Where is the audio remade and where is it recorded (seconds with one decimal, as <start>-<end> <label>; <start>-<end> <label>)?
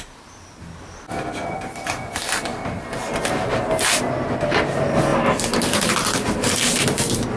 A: 0.0-7.4 recorded